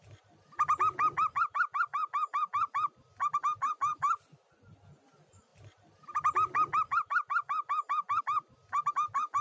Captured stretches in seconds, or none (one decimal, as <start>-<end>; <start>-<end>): 0.0-9.4